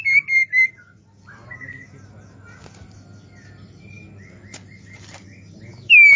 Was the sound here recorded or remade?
recorded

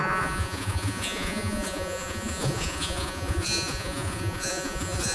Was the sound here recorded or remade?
remade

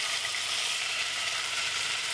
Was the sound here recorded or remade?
remade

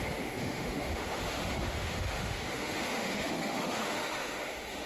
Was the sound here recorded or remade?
remade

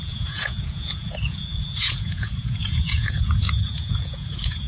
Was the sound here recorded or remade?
remade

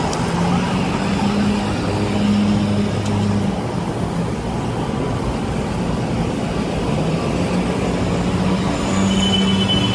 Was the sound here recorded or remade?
recorded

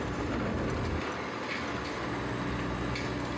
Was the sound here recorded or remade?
recorded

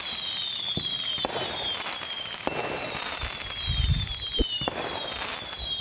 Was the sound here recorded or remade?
recorded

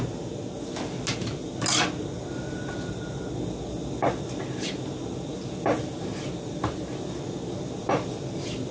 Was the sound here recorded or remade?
recorded